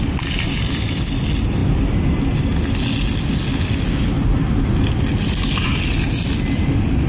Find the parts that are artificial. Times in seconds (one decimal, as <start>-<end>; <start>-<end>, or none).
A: none